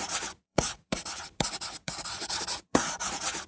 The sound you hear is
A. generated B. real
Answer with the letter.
A